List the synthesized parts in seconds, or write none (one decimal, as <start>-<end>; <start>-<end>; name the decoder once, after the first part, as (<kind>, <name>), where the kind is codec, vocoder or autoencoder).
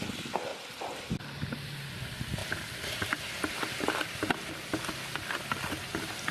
0.5-1.2 (vocoder, BigVGAN v2); 2.4-4.5